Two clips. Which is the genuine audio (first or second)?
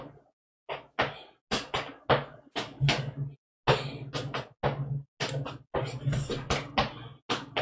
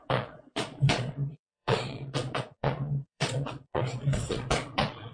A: first